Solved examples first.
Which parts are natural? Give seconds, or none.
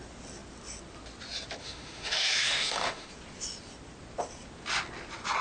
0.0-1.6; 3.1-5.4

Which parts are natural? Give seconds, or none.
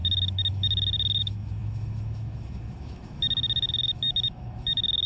none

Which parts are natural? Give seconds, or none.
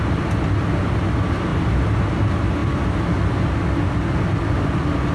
0.0-5.1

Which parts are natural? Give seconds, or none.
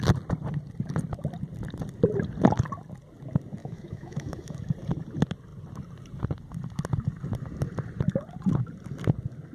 0.0-3.6; 4.6-9.5